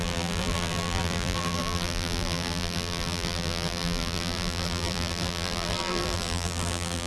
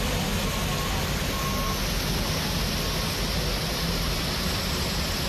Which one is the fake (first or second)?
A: first